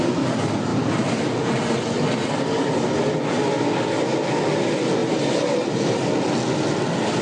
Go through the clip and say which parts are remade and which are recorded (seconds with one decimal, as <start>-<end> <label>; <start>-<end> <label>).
0.0-5.0 recorded; 5.0-6.1 remade; 6.1-7.2 recorded